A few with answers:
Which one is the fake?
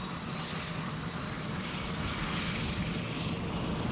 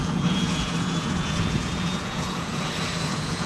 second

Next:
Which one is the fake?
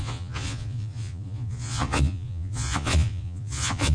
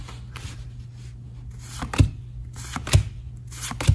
first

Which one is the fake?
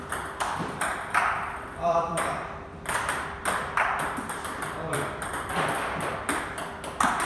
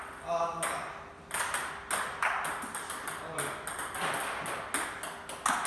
first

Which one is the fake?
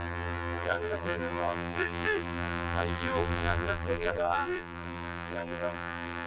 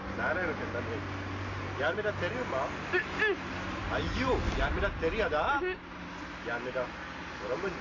first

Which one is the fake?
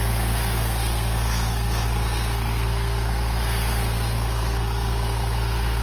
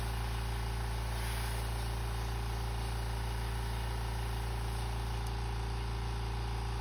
first